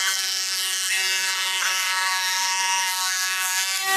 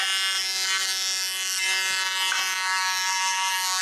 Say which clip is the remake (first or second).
first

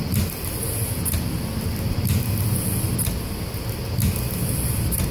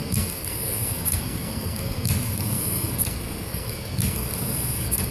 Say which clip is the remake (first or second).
second